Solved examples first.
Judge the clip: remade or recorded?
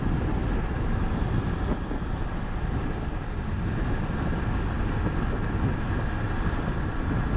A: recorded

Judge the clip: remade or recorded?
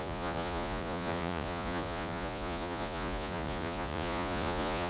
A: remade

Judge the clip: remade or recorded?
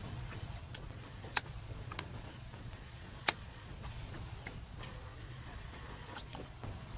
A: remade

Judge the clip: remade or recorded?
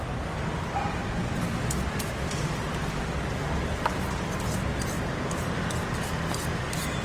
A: recorded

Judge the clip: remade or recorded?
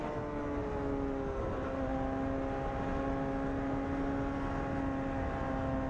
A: recorded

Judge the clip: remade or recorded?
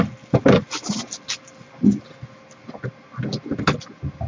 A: recorded